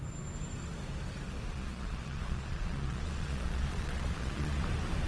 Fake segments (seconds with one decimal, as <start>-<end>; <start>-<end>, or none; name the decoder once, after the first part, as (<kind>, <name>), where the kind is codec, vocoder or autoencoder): 1.5-4.6 (vocoder, Vocos)

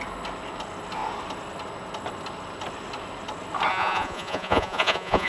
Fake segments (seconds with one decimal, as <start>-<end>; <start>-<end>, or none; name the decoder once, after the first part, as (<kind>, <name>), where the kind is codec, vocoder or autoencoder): 3.7-5.3 (vocoder, Vocos)

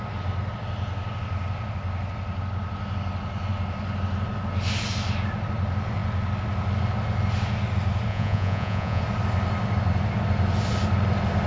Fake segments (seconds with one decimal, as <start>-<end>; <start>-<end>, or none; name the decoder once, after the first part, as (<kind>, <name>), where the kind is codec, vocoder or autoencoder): 8.1-9.0 (vocoder, Vocos)

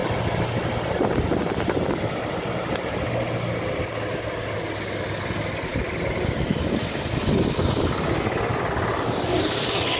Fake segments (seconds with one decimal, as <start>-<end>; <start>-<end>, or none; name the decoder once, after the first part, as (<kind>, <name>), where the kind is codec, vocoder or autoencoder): none

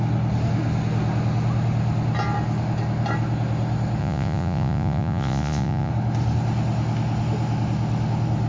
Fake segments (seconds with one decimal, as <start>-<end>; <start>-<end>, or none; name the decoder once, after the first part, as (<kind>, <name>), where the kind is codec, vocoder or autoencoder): 4.0-5.9 (vocoder, Vocos)